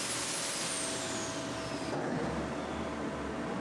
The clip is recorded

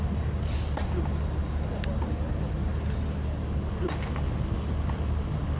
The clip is recorded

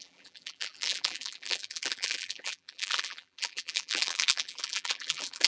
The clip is remade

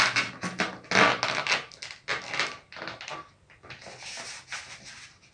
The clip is recorded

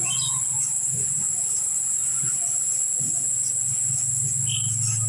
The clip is recorded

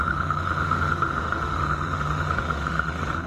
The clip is remade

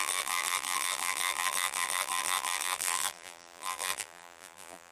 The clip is remade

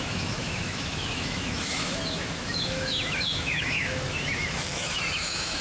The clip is remade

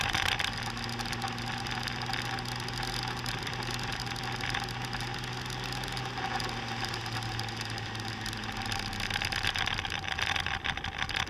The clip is recorded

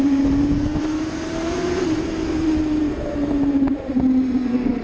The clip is remade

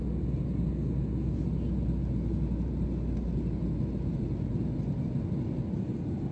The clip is recorded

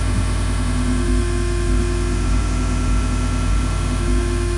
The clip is remade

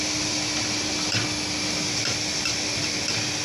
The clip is recorded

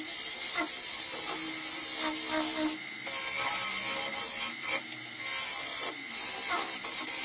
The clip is recorded